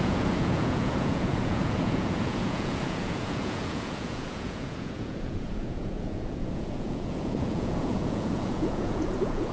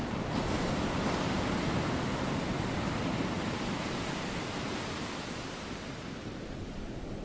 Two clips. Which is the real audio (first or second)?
second